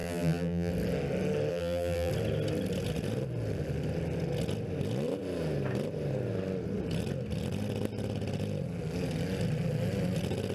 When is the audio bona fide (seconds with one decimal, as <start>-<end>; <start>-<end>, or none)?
0.7-1.5; 2.1-10.5